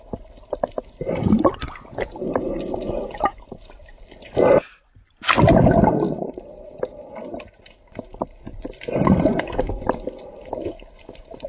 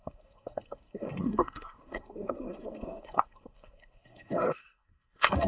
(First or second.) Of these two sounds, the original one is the first